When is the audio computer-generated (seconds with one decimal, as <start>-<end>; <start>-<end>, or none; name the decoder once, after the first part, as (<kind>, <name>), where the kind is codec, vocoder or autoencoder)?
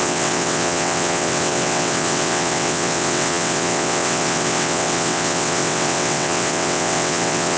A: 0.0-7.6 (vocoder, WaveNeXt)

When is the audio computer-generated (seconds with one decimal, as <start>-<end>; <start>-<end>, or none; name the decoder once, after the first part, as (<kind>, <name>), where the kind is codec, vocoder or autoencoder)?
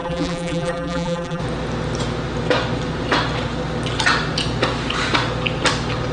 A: 0.0-1.4 (vocoder, BigVGAN v2)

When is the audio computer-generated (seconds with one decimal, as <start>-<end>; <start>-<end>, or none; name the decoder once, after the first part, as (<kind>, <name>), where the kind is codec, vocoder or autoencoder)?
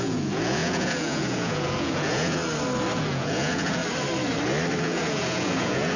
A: 0.0-2.4 (vocoder, Vocos); 3.0-3.8; 4.8-6.0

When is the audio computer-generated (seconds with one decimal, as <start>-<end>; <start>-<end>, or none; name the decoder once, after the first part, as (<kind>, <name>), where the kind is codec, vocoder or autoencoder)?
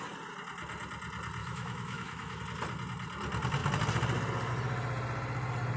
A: 1.4-2.4 (autoencoder, DAC-VAE)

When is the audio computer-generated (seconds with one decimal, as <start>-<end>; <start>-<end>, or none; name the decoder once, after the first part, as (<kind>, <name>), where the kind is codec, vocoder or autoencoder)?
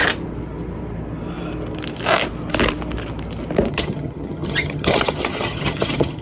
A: 3.7-6.2 (vocoder, HiFi-GAN)